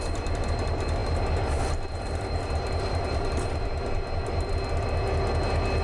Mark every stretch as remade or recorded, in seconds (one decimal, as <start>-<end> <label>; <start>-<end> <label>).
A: 0.0-1.0 recorded; 1.0-4.5 remade; 4.5-5.8 recorded